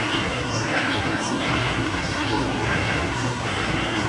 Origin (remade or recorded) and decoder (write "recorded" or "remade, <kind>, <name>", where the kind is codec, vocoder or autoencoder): remade, codec, SNAC